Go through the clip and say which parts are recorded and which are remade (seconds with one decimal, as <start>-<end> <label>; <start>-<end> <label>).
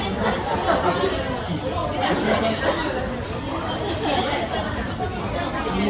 0.0-3.5 recorded; 3.5-4.9 remade; 4.9-5.9 recorded